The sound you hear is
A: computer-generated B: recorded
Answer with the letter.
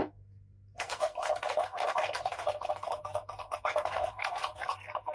A